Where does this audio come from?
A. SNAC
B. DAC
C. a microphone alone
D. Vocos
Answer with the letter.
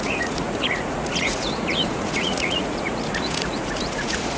D